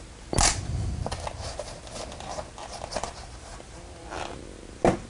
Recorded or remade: recorded